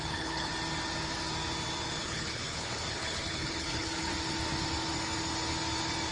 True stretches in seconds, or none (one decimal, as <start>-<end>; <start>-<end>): 0.5-2.0; 4.1-6.1